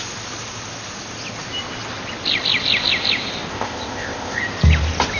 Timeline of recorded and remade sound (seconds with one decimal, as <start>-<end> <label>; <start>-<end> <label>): 0.0-3.5 recorded; 3.5-4.4 remade; 4.4-5.2 recorded